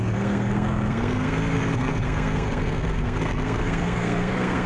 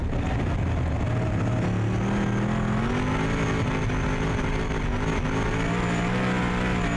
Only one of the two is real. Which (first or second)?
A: second